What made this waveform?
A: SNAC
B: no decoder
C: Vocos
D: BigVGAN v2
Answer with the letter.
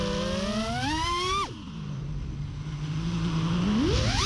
B